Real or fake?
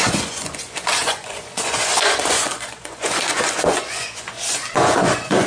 fake